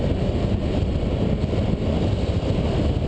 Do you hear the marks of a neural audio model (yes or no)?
no